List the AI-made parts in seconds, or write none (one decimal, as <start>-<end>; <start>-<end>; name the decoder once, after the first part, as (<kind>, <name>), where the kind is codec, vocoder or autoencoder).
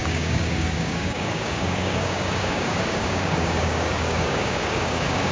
0.0-5.3 (codec, DAC)